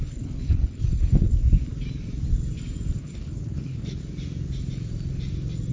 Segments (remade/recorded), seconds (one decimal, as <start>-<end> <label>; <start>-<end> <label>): 0.0-1.3 remade; 1.3-3.0 recorded; 3.0-4.0 remade; 4.0-5.7 recorded